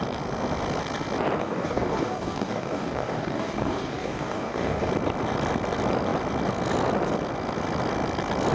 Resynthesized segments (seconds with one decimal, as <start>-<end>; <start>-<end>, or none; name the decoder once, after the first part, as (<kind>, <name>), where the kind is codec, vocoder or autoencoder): 1.4-4.9 (codec, DAC)